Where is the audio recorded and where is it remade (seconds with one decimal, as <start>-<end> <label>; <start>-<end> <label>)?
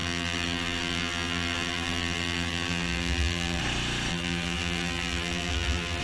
0.0-3.6 remade; 3.6-4.1 recorded; 4.1-6.0 remade